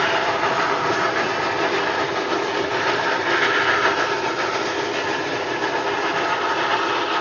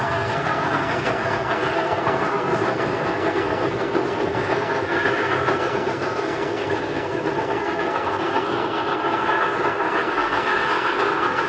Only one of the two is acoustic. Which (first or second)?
first